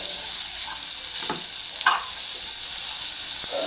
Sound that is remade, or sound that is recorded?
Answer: recorded